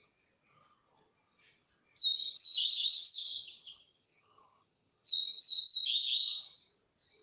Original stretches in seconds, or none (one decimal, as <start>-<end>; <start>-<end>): 0.0-2.2; 5.6-7.2